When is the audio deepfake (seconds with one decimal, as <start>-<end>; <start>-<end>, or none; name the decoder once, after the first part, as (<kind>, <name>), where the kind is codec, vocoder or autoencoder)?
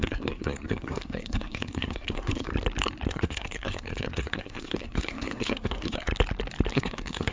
0.0-2.5 (codec, SNAC); 3.1-6.1; 6.7-7.3